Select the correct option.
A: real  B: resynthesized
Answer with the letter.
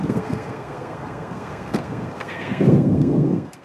B